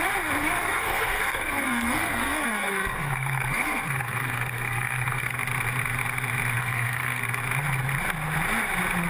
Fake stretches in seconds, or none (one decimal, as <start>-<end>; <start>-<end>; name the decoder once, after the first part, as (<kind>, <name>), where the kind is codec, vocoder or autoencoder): 0.4-5.3 (codec, SNAC); 6.6-7.2